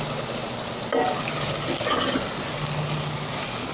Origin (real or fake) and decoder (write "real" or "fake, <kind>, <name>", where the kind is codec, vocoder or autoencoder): real